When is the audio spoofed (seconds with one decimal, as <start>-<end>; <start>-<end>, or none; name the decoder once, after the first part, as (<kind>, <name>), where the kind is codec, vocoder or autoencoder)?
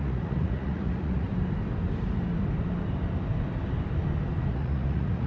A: 0.0-1.3 (vocoder, Vocos); 4.5-5.3